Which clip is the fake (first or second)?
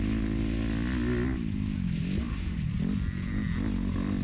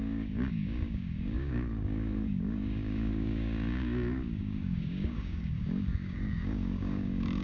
second